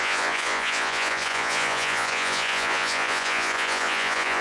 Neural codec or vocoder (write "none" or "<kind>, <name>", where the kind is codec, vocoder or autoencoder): vocoder, Vocos